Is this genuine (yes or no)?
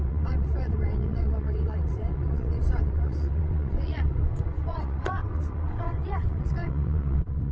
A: no